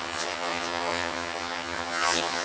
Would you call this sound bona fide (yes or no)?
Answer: no